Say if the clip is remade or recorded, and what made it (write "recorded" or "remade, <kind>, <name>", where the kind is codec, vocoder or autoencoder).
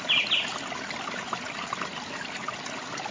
recorded